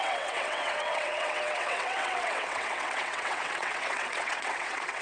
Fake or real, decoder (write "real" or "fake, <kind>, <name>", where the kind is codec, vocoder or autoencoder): fake, vocoder, WaveNeXt